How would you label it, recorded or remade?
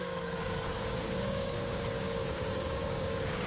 remade